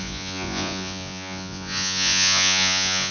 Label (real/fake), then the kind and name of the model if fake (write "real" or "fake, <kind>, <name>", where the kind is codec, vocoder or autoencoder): fake, vocoder, Vocos